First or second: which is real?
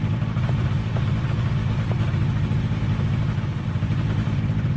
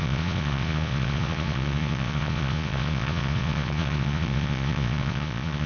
first